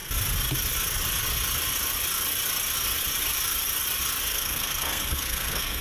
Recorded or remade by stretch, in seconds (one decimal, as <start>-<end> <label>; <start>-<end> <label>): 0.0-4.3 recorded; 4.3-5.8 remade